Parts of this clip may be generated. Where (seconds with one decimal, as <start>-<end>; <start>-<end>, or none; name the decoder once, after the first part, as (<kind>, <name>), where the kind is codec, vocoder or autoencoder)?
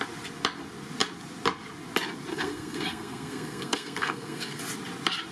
2.3-4.6 (codec, SNAC)